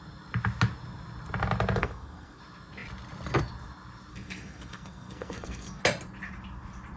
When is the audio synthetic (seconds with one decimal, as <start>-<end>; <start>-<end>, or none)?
1.8-2.4; 4.1-5.8